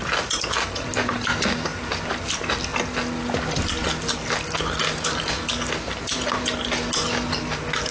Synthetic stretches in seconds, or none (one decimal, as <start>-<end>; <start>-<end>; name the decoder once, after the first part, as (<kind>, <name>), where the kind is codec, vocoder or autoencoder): none